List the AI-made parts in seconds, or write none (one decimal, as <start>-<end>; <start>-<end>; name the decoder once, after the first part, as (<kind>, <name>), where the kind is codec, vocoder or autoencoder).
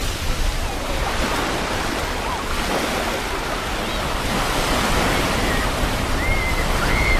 none